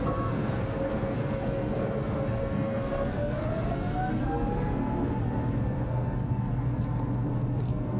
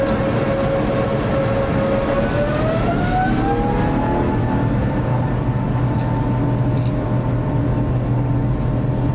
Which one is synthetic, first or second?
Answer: first